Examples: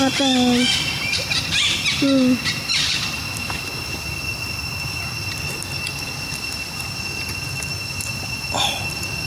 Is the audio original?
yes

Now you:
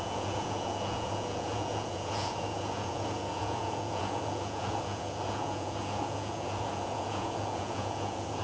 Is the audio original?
no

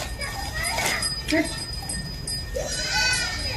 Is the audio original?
yes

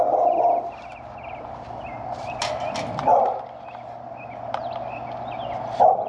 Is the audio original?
yes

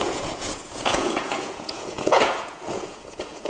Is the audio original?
no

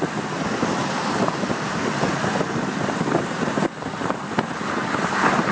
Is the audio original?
yes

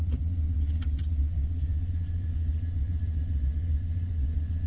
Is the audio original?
no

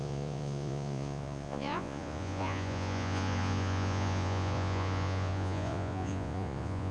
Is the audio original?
no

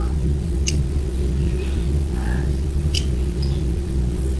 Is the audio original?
no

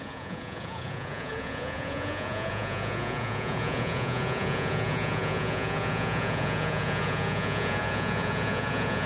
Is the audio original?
no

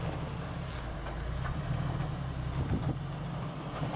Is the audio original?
yes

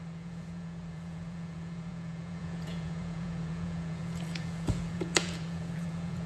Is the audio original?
no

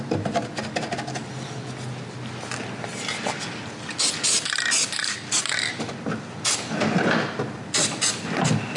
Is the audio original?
yes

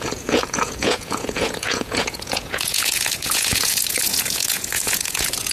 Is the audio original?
no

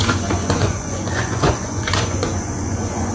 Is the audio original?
no